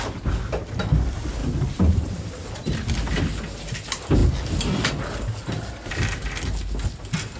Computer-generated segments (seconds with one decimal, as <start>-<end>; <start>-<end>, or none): none